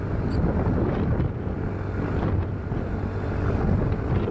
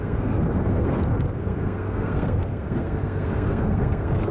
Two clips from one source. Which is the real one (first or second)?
first